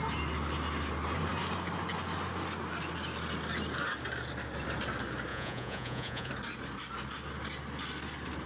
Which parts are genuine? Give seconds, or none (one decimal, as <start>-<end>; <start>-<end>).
0.0-5.3; 6.3-8.5